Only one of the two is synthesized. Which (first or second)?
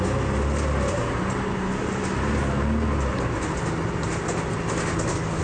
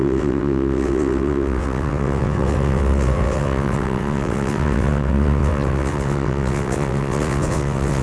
second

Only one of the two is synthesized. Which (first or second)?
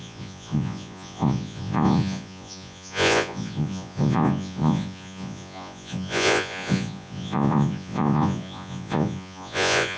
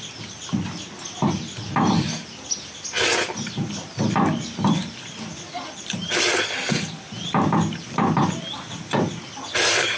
first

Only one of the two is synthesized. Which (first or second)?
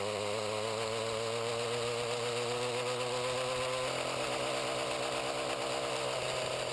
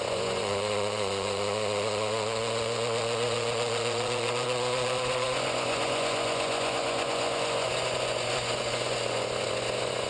second